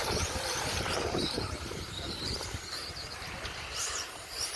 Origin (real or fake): fake